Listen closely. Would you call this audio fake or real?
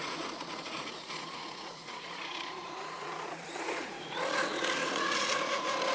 fake